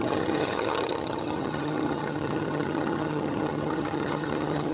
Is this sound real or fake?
fake